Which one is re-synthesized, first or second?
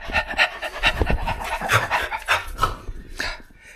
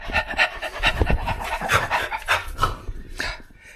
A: second